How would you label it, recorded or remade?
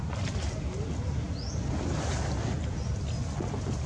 recorded